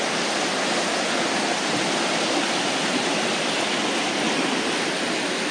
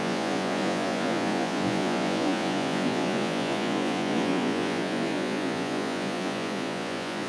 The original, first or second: first